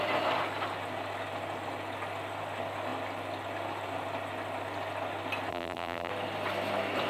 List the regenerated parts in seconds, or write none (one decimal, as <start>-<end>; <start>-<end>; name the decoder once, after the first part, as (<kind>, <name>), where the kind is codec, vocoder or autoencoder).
5.5-6.1 (vocoder, BigVGAN v2)